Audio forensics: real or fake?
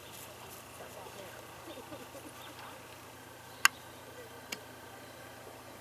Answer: real